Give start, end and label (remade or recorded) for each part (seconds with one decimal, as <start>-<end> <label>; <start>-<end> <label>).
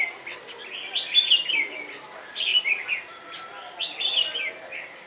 0.0-5.1 recorded